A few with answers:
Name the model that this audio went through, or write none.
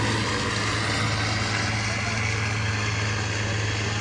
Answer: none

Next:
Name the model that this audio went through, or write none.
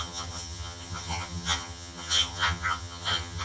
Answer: vocoder, HiFi-GAN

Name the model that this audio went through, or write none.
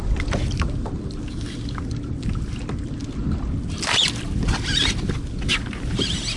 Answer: none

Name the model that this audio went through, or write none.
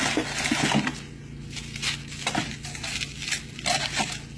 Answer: none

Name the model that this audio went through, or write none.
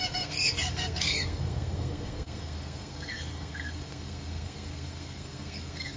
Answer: codec, SNAC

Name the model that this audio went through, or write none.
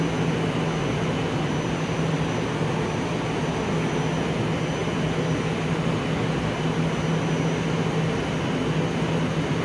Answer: none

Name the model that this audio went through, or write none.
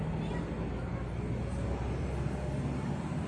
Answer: none